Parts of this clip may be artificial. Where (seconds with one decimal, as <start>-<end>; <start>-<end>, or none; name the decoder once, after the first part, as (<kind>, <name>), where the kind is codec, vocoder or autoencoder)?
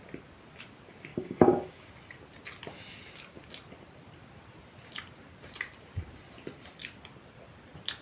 1.1-1.9 (codec, DAC)